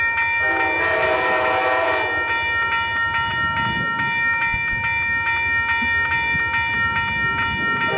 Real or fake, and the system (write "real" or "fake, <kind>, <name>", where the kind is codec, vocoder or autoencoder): real